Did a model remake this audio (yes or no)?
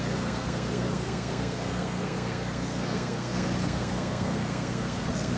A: yes